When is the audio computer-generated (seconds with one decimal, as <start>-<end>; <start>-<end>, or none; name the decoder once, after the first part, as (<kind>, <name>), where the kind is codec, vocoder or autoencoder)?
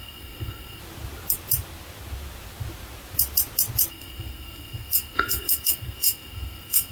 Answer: 0.0-0.8 (codec, SNAC); 3.9-6.9